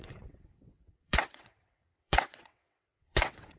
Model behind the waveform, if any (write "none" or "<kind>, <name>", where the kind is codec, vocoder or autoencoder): vocoder, WaveNeXt